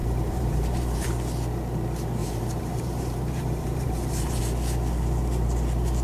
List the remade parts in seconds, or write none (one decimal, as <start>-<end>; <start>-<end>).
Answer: 0.0-1.1; 2.2-4.4